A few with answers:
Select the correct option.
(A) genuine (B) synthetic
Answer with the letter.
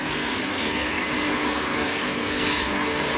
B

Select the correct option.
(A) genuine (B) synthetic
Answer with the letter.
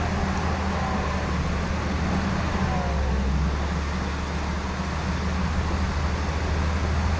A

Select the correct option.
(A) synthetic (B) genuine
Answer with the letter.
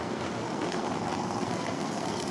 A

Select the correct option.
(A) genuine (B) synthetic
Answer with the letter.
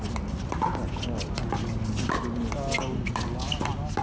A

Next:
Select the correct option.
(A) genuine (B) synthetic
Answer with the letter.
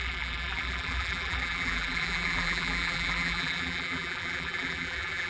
B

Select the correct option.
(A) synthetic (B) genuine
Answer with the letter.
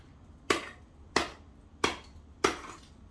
B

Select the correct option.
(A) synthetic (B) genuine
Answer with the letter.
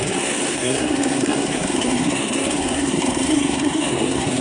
A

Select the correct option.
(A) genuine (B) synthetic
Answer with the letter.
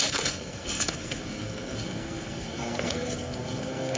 B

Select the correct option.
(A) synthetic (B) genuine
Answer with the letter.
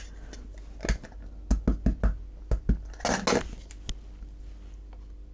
B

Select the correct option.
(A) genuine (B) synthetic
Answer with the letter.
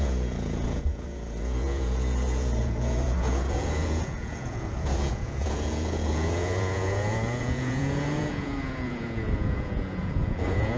B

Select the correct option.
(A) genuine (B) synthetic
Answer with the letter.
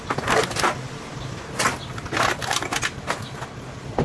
A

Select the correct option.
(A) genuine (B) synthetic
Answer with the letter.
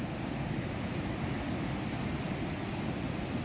A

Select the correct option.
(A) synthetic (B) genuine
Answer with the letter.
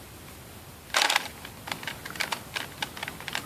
A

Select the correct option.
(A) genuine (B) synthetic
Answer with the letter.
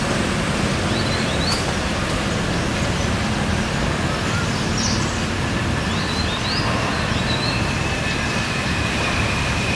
A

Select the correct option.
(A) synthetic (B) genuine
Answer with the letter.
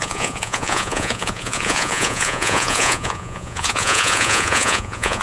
A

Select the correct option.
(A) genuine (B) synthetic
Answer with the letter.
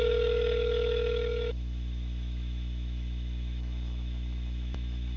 B